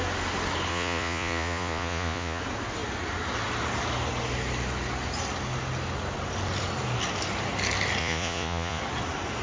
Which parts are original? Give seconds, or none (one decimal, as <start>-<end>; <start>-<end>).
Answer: 0.0-0.7; 2.4-8.0; 8.8-9.4